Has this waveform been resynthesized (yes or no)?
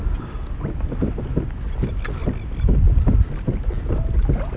no